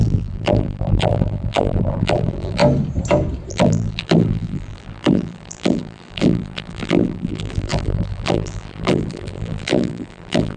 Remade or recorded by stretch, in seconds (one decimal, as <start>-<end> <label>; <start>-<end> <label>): 0.0-2.6 remade; 2.6-3.5 recorded; 3.5-10.6 remade